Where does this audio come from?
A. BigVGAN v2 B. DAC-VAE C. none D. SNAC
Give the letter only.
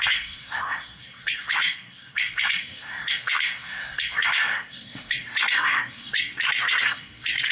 D